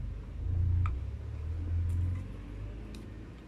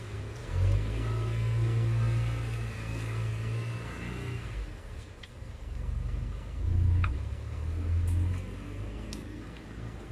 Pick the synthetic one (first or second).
second